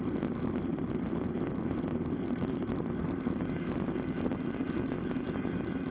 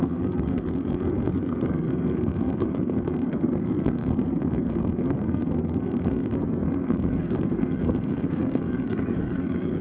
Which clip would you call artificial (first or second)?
second